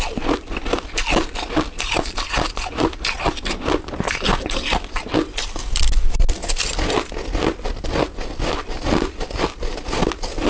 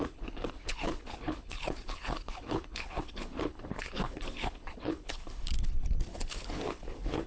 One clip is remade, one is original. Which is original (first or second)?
first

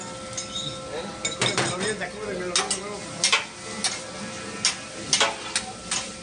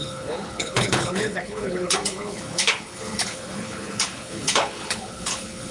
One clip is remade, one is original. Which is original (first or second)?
first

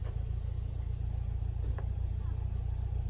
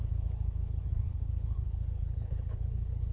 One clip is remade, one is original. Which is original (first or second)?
first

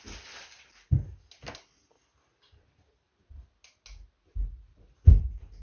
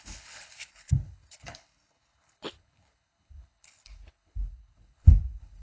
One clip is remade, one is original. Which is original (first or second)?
first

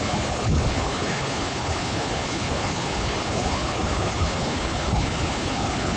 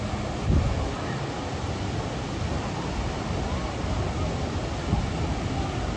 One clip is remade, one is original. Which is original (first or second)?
second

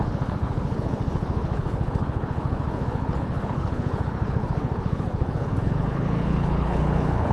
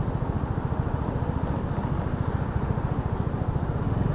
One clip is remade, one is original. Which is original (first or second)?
second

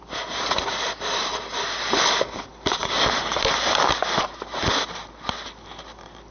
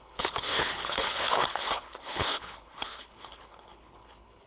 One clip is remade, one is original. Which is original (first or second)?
first